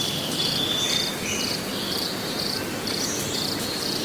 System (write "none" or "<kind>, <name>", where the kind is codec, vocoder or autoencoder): none